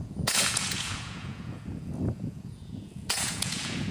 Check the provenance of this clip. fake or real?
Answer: fake